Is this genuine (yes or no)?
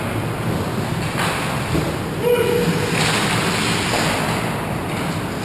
yes